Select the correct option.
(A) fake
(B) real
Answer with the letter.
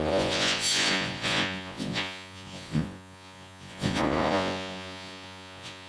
A